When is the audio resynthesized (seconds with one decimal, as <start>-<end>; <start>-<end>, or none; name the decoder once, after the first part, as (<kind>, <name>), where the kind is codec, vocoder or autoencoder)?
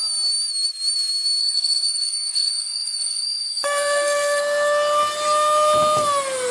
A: 1.4-4.4 (codec, SNAC)